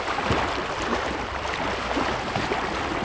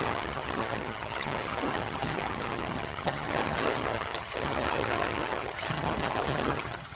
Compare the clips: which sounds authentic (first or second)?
first